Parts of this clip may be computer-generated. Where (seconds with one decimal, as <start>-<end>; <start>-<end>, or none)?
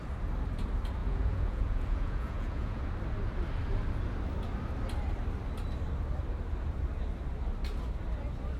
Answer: 1.0-2.8